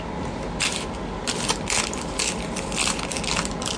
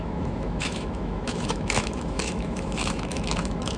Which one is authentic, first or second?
first